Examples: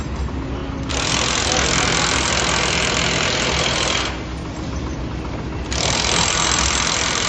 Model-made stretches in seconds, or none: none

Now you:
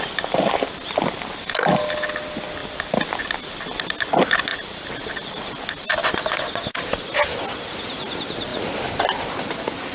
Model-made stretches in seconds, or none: 4.5-6.5 (vocoder, BigVGAN v2)

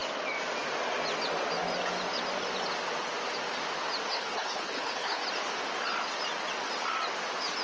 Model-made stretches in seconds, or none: 4.1-5.2 (codec, HILCodec)

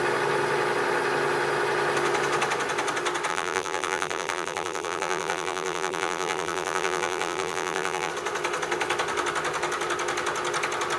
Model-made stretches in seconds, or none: 3.3-8.1 (vocoder, BigVGAN v2)